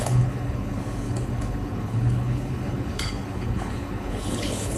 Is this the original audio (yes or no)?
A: no